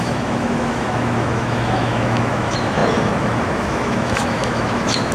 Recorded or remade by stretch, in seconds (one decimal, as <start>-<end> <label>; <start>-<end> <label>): 0.0-5.1 remade